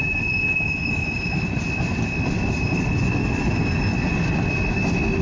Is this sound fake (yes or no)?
no